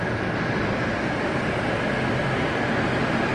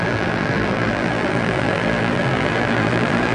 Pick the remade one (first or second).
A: second